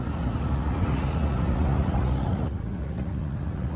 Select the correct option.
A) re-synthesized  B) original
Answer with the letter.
A